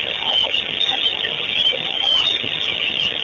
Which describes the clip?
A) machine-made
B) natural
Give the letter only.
A